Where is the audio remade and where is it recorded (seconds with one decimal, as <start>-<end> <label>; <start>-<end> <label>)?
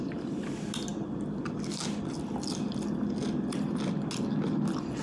0.0-5.0 recorded